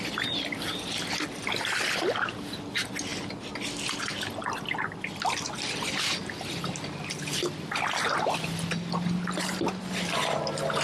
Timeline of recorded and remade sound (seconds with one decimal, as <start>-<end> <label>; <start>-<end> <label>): 0.0-10.8 recorded

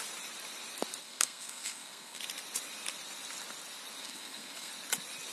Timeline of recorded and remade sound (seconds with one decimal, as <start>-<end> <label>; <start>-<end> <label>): 0.0-1.0 recorded; 1.0-2.2 remade; 2.2-4.0 recorded; 4.0-4.7 remade; 4.7-5.3 recorded

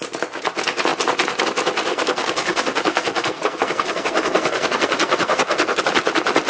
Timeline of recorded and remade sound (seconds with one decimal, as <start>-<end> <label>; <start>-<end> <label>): 0.0-1.9 recorded; 1.9-5.8 remade; 5.8-6.5 recorded

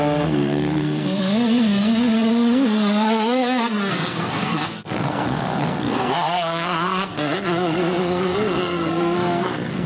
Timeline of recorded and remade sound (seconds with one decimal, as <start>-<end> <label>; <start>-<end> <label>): 0.0-9.9 remade

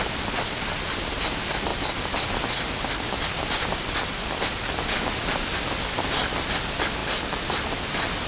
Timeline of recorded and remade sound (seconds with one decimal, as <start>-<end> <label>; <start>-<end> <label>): 0.0-8.3 recorded

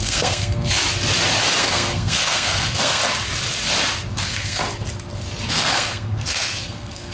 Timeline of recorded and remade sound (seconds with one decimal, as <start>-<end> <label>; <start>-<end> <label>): 0.0-0.8 remade; 0.8-1.6 recorded; 1.6-3.0 remade; 3.0-4.1 recorded; 4.1-4.6 remade; 4.6-5.5 recorded; 5.5-7.1 remade

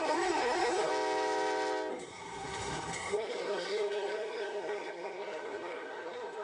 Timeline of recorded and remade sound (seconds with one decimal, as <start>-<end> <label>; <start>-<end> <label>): 0.0-0.9 remade; 0.9-1.9 recorded; 1.9-6.4 remade

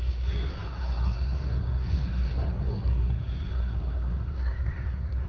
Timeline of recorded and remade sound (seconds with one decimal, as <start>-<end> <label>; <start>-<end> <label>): 0.0-5.3 remade